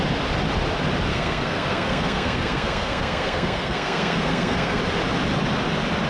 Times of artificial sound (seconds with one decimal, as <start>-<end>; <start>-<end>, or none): 1.1-4.8